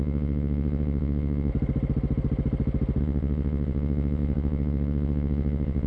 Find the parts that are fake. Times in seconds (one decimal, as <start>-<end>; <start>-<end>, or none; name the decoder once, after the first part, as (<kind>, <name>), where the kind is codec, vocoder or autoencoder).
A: 0.0-1.5 (vocoder, WaveNeXt); 3.0-5.9